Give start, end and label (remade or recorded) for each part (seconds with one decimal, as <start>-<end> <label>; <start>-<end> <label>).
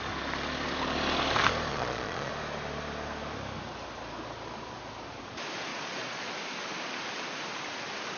0.0-1.7 recorded; 1.7-2.3 remade; 2.3-5.7 recorded; 5.7-6.3 remade; 6.3-8.2 recorded